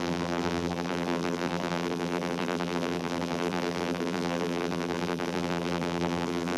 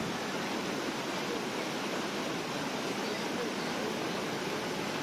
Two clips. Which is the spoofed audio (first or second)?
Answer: first